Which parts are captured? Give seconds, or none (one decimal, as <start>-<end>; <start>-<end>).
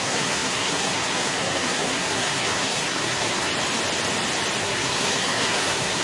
3.5-4.6